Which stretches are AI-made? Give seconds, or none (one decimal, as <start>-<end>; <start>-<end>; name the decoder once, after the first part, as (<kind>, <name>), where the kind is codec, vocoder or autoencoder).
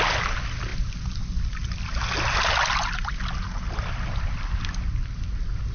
none